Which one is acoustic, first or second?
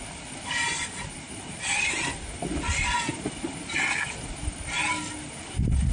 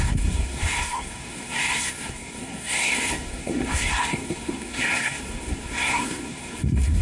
first